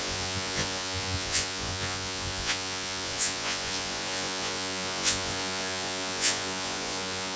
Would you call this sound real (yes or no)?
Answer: no